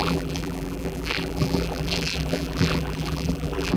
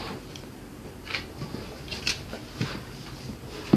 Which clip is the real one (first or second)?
second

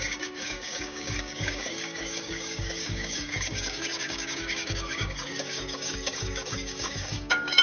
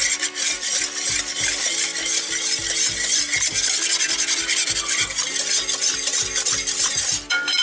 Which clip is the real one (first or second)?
second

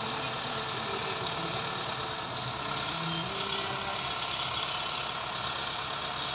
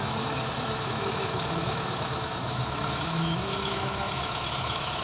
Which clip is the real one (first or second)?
first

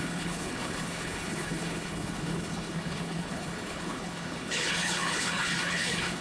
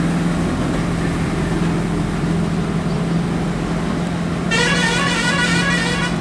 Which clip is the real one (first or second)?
second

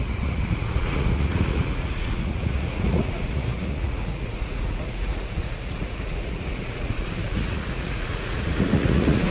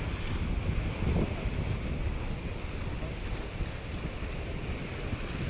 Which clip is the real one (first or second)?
second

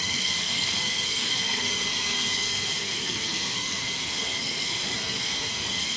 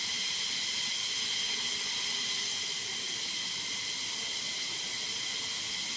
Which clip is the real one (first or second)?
second